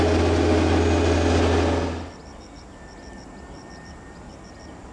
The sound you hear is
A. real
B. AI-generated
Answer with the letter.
A